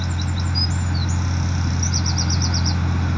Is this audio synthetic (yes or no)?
no